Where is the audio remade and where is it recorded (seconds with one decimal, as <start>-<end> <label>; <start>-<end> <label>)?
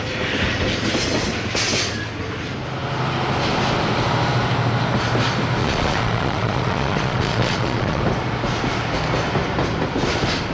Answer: 0.0-5.6 recorded; 5.6-8.0 remade; 8.0-10.5 recorded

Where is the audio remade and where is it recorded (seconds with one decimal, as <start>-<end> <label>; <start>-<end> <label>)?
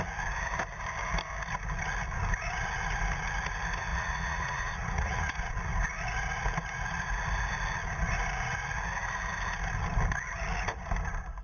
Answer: 0.0-3.9 recorded; 3.9-5.5 remade; 5.5-11.4 recorded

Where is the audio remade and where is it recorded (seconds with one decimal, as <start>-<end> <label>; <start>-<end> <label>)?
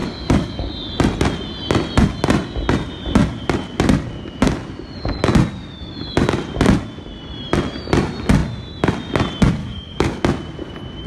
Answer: 0.0-0.7 remade; 0.7-9.6 recorded; 9.6-10.2 remade; 10.2-11.1 recorded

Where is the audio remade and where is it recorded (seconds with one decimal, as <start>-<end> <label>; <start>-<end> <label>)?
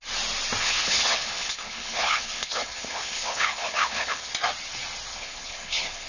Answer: 0.0-0.6 recorded; 0.6-4.3 remade; 4.3-5.1 recorded; 5.1-6.1 remade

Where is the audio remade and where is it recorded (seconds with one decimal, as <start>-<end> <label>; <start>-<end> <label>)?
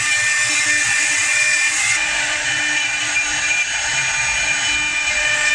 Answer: 0.0-0.8 recorded; 0.8-2.6 remade; 2.6-4.9 recorded; 4.9-5.5 remade